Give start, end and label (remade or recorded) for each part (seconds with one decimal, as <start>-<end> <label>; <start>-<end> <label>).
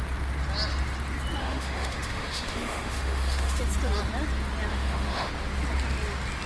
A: 0.0-1.4 recorded; 1.4-3.6 remade; 3.6-4.7 recorded; 4.7-5.3 remade; 5.3-6.5 recorded